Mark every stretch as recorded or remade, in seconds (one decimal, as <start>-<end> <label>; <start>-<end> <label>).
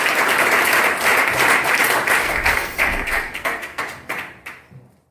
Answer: 0.0-2.2 recorded; 2.2-3.8 remade; 3.8-5.1 recorded